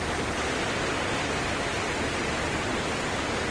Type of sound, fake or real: real